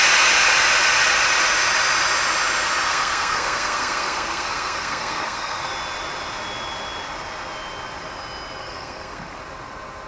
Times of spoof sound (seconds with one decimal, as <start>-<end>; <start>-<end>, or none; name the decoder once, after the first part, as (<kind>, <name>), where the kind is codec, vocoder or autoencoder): 2.9-5.7 (codec, SNAC); 8.6-9.4